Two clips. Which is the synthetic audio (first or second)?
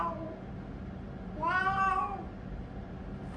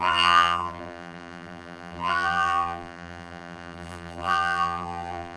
second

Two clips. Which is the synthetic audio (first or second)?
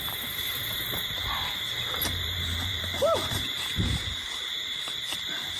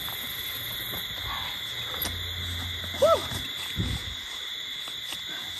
first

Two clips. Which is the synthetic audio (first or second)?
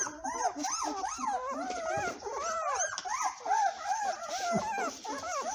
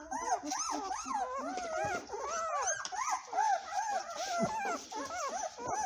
first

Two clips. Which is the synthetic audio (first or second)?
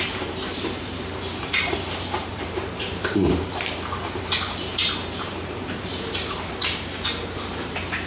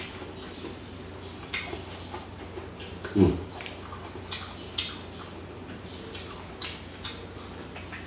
first